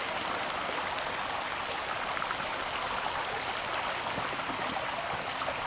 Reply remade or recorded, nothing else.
recorded